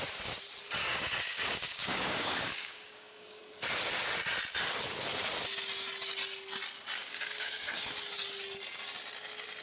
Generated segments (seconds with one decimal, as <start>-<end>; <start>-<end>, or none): 0.8-3.4; 7.0-7.7